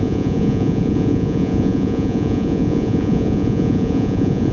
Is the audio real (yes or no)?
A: no